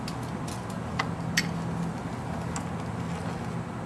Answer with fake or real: real